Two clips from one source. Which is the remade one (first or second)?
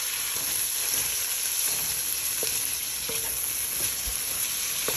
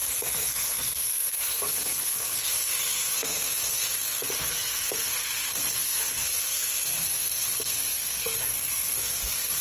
second